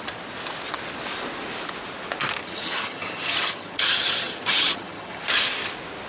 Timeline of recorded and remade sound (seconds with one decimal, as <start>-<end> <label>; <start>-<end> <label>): 0.0-2.4 recorded; 2.4-5.2 remade; 5.2-6.1 recorded